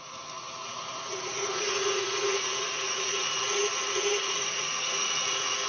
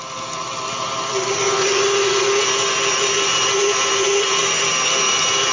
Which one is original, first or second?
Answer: second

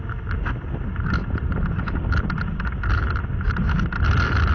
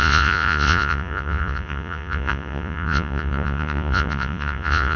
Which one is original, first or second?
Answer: first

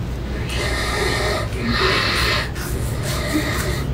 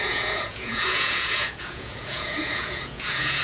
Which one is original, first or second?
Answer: first